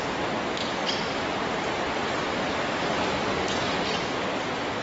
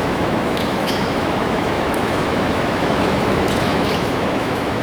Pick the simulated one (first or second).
second